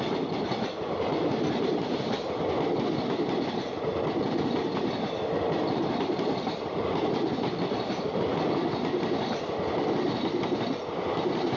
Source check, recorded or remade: recorded